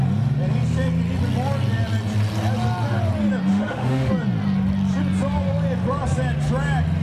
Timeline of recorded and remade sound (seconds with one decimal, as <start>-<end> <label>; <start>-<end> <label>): 0.0-3.5 recorded; 3.5-4.1 remade; 4.1-7.0 recorded